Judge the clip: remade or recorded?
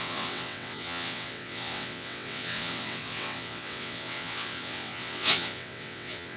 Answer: remade